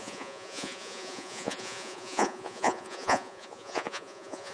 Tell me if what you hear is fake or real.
fake